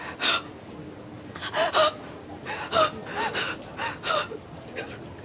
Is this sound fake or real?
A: real